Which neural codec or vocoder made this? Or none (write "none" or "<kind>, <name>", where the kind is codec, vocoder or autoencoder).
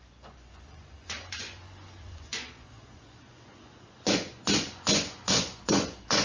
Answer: vocoder, Vocos